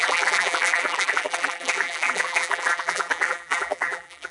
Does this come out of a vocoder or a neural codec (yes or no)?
yes